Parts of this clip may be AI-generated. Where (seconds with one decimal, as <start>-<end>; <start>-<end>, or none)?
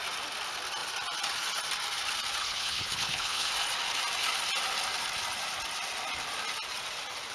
2.4-3.5